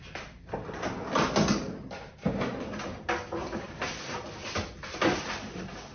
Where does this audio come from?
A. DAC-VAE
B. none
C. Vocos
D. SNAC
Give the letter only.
B